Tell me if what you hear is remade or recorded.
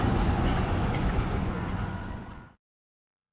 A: remade